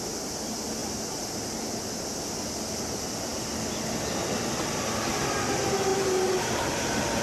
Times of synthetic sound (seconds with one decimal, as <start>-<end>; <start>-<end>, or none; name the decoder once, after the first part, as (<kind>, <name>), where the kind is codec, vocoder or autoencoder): none